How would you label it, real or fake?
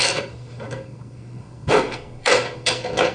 fake